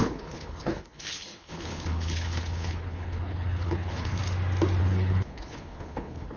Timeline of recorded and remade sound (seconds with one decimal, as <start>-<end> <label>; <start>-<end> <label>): 0.0-4.2 remade; 4.2-4.8 recorded; 4.8-6.4 remade